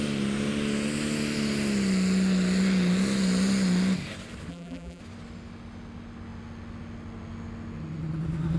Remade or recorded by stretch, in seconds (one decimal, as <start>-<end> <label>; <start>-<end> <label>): 0.0-4.5 recorded; 4.5-5.0 remade; 5.0-8.6 recorded